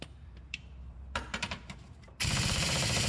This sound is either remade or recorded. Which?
remade